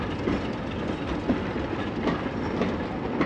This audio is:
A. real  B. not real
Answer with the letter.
A